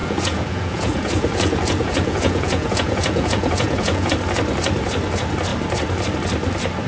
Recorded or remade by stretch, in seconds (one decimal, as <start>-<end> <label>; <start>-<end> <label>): 0.0-4.1 remade; 4.1-6.9 recorded